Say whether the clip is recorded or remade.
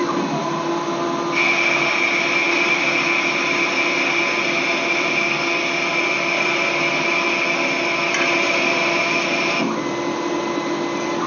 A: recorded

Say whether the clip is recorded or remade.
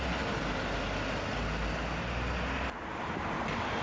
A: recorded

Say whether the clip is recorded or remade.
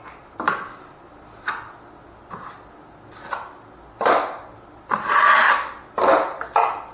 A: recorded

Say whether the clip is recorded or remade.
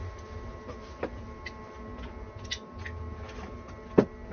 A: recorded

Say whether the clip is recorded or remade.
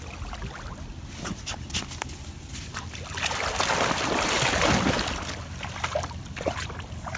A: recorded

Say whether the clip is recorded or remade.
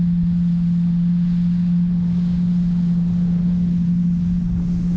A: recorded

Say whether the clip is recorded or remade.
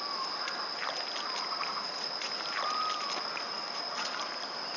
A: recorded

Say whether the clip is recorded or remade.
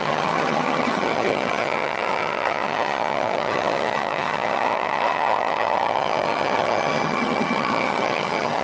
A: remade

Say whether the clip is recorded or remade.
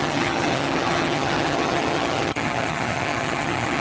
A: remade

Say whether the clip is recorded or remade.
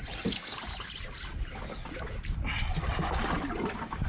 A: recorded